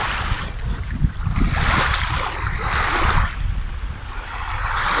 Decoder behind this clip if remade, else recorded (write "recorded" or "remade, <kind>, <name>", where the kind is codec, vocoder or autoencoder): recorded